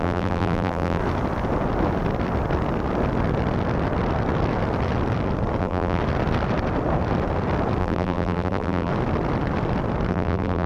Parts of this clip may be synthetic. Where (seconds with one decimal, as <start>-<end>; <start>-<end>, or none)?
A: 0.0-1.0; 5.6-6.0; 7.8-8.9; 10.1-10.7